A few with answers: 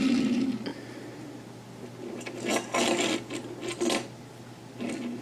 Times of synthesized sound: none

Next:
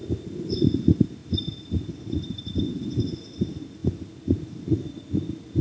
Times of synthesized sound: 1.2-2.7 (vocoder, BigVGAN v2)

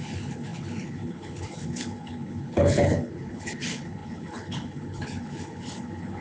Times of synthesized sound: 0.0-6.2 (codec, HILCodec)